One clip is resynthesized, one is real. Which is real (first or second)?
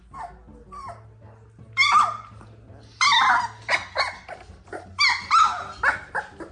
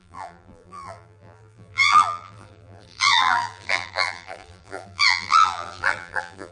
first